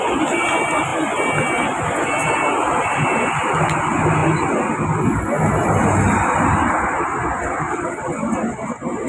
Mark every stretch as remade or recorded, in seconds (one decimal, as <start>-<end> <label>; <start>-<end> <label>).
0.0-9.1 recorded

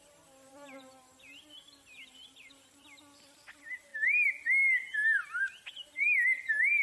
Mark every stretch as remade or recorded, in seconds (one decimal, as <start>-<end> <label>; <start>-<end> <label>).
0.0-6.8 recorded

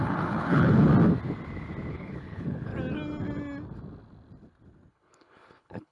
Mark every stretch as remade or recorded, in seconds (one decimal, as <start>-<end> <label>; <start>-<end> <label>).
0.0-0.9 remade; 0.9-1.9 recorded; 1.9-2.7 remade; 2.7-4.9 recorded; 4.9-5.9 remade

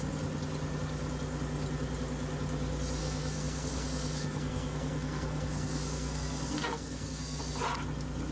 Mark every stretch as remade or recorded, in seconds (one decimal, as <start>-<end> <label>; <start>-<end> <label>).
0.0-3.0 recorded; 3.0-7.4 remade; 7.4-8.3 recorded

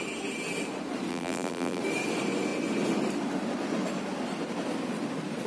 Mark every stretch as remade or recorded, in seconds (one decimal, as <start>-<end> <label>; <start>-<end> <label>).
0.0-1.1 recorded; 1.1-1.8 remade; 1.8-5.5 recorded

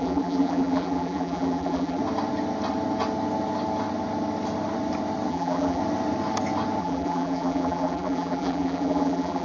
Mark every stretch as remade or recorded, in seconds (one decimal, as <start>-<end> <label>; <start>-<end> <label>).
0.0-2.0 remade; 2.0-5.3 recorded; 5.3-5.8 remade; 5.8-6.8 recorded; 6.8-9.4 remade